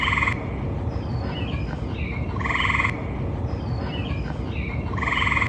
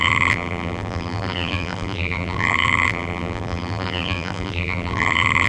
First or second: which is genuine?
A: first